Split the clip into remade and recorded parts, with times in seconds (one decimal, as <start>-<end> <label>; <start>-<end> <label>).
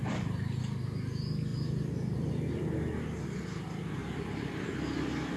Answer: 0.0-0.6 remade; 0.6-1.5 recorded; 1.5-2.6 remade; 2.6-4.0 recorded; 4.0-4.7 remade; 4.7-5.4 recorded